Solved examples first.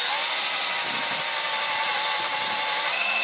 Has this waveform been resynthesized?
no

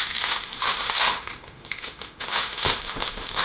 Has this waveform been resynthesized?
yes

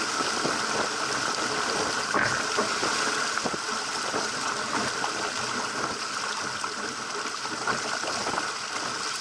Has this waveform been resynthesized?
no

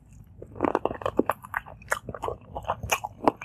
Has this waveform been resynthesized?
no